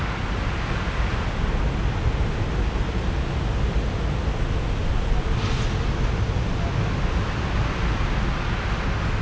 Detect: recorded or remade recorded